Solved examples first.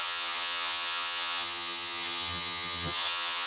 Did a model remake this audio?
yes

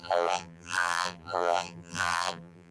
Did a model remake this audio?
yes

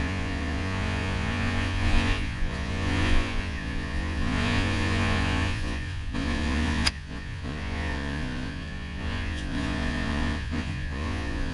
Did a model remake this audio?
yes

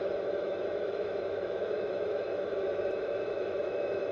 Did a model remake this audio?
yes